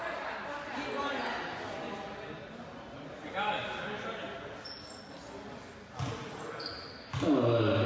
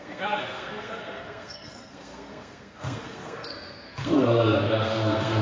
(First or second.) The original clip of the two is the first